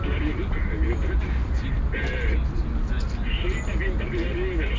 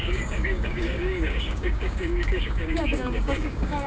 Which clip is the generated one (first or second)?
second